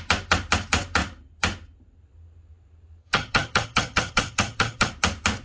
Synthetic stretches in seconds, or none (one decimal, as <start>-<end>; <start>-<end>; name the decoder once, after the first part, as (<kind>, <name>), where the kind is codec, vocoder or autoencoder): 3.0-4.9 (vocoder, HiFi-GAN)